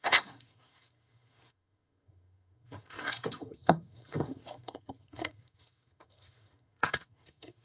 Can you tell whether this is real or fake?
fake